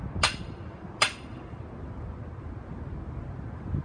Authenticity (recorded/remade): recorded